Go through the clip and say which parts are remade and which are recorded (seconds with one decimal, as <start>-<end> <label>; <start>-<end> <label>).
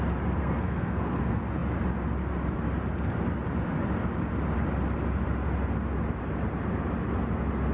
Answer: 0.0-0.4 recorded; 0.4-1.2 remade; 1.2-7.7 recorded